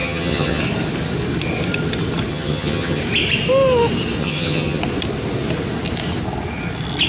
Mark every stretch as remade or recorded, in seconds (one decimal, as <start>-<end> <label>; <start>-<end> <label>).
0.0-0.6 remade; 0.6-2.3 recorded; 2.3-3.0 remade; 3.0-4.2 recorded; 4.2-4.8 remade; 4.8-7.1 recorded